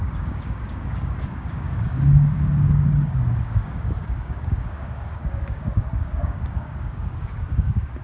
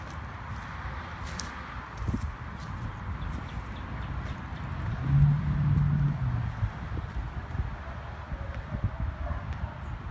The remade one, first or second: first